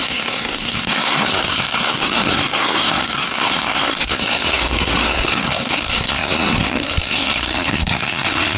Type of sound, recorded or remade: remade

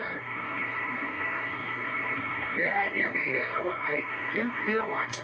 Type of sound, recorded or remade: remade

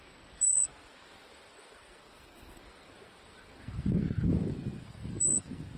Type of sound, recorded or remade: remade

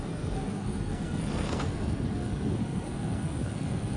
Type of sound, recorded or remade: remade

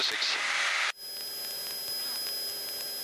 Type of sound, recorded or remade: recorded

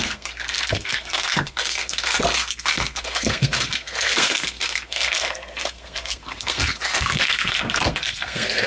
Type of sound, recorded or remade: remade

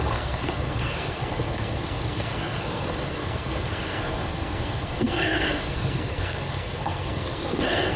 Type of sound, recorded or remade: remade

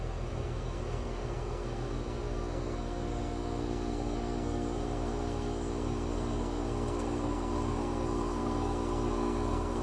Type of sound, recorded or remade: remade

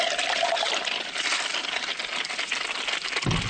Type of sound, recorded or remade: recorded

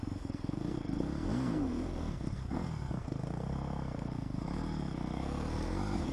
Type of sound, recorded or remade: remade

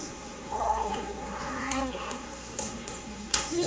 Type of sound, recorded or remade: remade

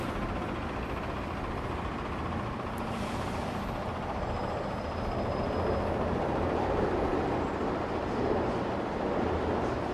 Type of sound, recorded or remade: recorded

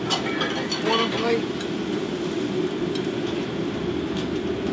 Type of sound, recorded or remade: recorded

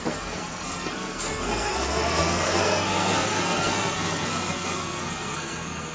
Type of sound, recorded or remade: remade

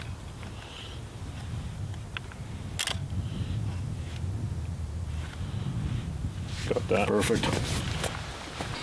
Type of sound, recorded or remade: recorded